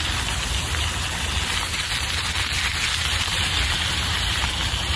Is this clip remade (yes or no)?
no